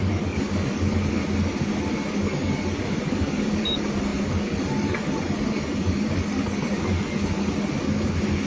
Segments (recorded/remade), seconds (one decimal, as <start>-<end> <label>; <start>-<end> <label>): 0.0-1.2 remade; 1.2-2.1 recorded; 2.1-8.5 remade